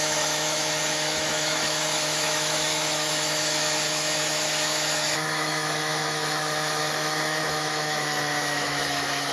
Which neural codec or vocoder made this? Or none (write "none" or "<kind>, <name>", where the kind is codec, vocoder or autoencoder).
autoencoder, DAC-VAE